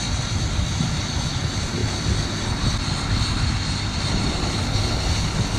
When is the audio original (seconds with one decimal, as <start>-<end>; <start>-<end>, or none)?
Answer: 0.0-5.6